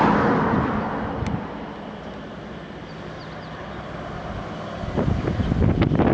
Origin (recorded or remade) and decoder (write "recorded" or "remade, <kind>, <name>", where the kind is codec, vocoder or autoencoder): recorded